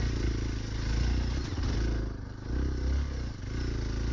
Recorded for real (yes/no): yes